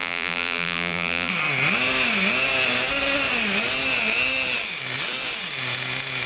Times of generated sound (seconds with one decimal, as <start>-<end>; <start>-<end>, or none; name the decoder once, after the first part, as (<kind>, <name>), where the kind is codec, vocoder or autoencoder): 0.0-1.3 (vocoder, BigVGAN v2)